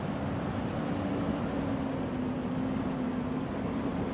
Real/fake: real